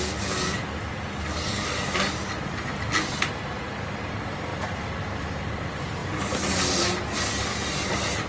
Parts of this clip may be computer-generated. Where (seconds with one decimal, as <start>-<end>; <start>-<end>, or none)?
none